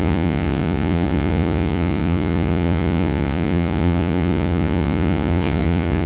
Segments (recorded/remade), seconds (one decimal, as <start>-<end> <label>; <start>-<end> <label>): 0.0-6.1 remade